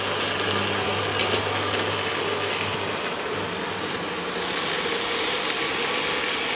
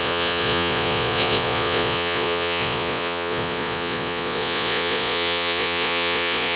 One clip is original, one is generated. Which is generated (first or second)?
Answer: second